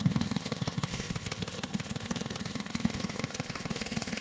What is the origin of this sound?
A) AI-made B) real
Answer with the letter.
A